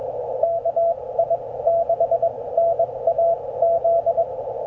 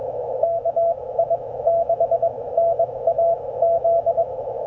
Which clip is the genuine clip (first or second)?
first